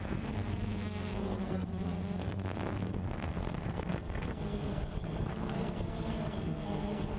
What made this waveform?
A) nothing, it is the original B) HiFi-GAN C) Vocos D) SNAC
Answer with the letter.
D